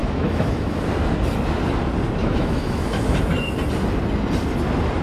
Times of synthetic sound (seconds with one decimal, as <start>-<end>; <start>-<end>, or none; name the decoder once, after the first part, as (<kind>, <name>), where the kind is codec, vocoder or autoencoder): 0.0-0.9 (autoencoder, DAC-VAE); 2.2-3.2